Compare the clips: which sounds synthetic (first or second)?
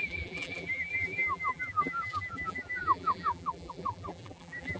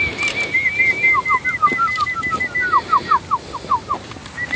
first